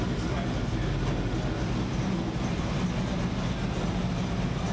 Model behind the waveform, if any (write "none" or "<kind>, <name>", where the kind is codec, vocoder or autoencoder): none